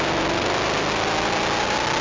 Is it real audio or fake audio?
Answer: real